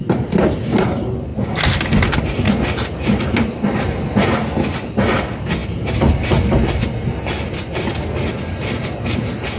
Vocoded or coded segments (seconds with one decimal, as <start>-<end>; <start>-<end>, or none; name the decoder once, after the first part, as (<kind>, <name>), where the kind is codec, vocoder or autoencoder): none